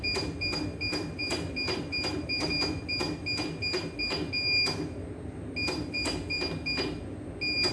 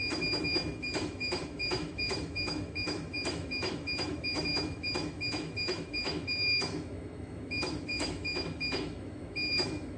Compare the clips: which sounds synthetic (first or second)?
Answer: second